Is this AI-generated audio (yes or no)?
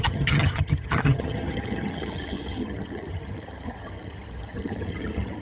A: yes